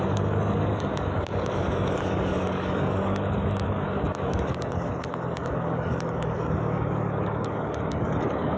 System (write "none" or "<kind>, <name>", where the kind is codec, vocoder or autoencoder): codec, DAC